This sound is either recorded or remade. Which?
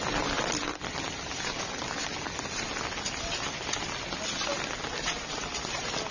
recorded